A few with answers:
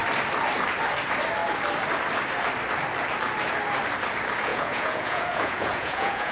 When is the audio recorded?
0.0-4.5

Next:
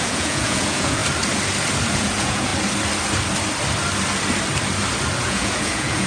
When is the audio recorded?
1.0-1.9; 2.5-5.2

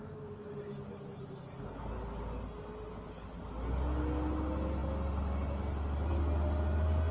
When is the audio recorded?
0.0-7.1

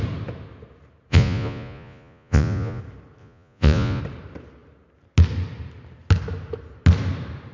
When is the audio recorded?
0.0-1.1; 2.8-3.2; 4.0-7.5

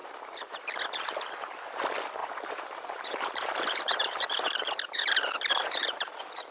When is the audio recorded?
0.6-2.2; 6.1-6.5

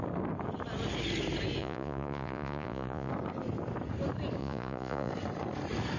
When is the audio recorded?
0.0-1.6; 3.1-4.4; 5.1-6.0

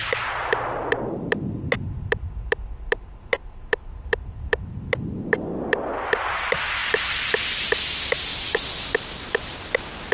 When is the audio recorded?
0.9-3.3; 6.3-8.3

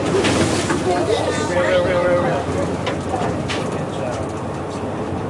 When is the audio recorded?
0.0-5.3